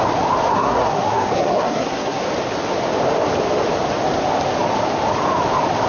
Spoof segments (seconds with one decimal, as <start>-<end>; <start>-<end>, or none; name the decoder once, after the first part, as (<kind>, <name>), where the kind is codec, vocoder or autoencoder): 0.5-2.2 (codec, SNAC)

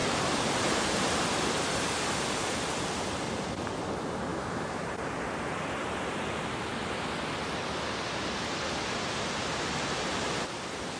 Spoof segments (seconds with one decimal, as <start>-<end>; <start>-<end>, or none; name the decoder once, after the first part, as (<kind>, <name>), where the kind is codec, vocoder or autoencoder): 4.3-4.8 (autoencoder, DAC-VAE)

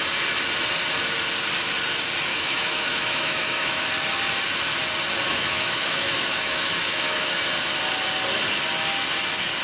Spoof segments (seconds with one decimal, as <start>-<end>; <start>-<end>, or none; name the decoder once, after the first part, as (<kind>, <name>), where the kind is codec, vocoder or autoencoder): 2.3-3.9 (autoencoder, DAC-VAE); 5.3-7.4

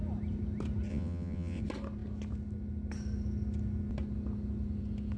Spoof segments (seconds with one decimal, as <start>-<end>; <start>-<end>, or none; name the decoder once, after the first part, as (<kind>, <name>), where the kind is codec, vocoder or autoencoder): 0.9-1.6 (vocoder, WaveNeXt)